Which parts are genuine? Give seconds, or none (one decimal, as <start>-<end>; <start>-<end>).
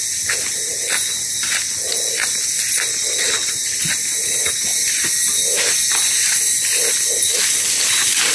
0.0-2.9; 3.5-8.3